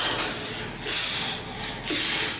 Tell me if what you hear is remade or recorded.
recorded